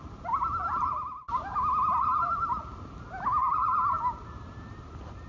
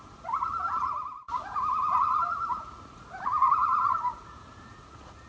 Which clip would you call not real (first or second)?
second